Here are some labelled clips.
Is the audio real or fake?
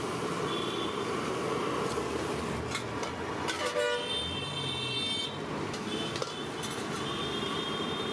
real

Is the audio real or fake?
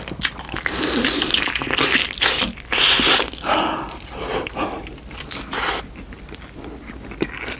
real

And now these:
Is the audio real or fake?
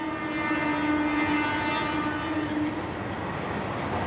real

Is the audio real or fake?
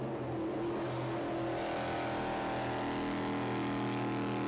real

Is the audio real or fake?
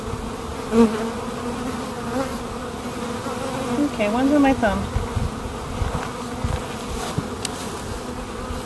real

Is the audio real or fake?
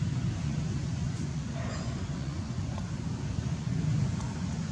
fake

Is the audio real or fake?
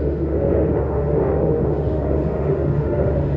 fake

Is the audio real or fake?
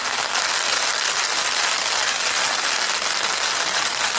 real